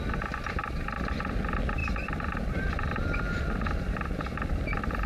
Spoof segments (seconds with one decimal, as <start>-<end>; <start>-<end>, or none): 0.6-1.3; 1.8-5.1